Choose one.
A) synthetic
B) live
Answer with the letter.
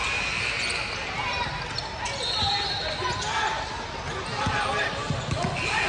B